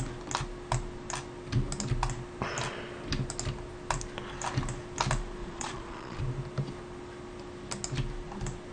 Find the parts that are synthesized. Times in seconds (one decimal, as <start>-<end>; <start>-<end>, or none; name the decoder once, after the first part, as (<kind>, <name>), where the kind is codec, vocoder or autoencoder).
5.4-6.2 (vocoder, Vocos)